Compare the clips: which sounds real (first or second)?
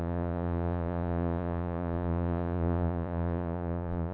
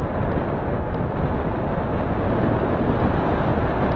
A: second